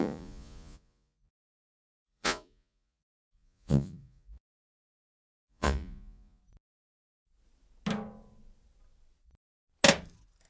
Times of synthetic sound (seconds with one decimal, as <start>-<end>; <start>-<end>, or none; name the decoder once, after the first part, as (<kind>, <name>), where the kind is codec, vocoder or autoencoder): 0.0-6.4 (vocoder, Vocos)